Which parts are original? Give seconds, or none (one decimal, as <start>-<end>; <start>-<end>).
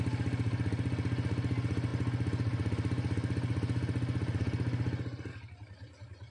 0.0-6.3